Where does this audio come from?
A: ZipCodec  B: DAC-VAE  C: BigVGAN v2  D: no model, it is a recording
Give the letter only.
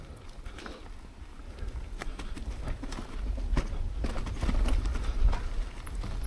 D